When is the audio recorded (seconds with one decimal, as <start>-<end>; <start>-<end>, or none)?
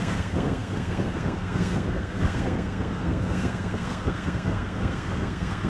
none